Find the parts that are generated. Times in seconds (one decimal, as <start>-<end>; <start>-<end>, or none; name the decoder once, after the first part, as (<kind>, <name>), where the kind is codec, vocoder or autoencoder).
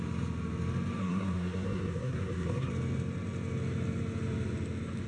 1.0-2.7 (codec, SNAC)